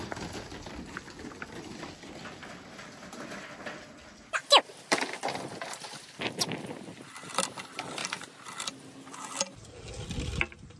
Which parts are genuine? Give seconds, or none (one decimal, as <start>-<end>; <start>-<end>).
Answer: 0.0-10.8